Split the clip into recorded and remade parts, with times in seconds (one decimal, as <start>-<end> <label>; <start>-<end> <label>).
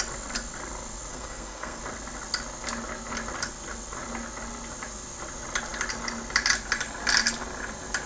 0.0-1.1 recorded; 1.1-1.8 remade; 1.8-8.1 recorded